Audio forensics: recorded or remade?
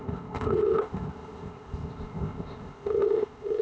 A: remade